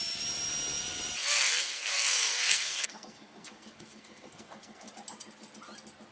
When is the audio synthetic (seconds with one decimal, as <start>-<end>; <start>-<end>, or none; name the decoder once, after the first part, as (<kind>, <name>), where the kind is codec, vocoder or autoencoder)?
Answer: 1.2-4.9 (codec, SNAC)